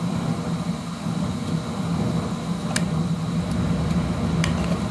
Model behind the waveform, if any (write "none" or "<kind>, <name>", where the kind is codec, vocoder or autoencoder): none